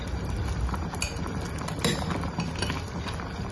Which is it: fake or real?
real